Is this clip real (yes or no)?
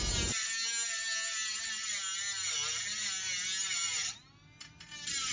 yes